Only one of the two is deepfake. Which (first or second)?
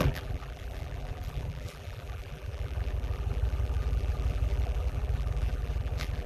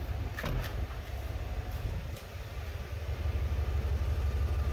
first